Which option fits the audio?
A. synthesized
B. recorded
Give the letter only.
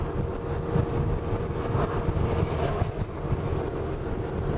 B